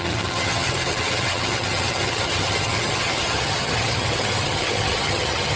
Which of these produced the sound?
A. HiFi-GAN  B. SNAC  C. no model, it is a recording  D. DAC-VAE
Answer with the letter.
A